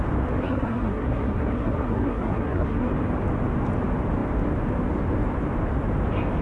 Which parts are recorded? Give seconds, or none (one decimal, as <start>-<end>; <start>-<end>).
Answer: 0.0-0.4; 2.9-6.4

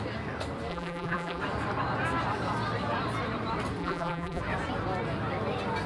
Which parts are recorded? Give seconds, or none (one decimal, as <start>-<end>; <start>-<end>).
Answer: 0.0-0.7; 1.4-3.8; 4.4-5.9

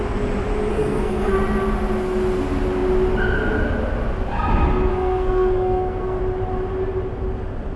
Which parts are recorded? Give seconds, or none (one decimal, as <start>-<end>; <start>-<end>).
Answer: 0.0-0.7; 1.3-4.9; 6.2-7.8

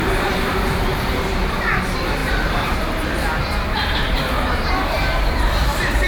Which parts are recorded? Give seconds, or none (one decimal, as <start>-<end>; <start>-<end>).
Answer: 0.0-2.2

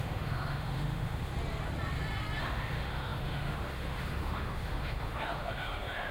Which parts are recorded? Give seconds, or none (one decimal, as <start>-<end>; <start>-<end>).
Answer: 1.3-2.4